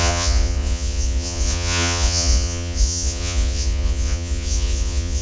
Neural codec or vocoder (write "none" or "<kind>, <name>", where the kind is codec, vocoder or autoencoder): vocoder, Vocos